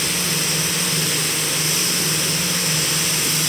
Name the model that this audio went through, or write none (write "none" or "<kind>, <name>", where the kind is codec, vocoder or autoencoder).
none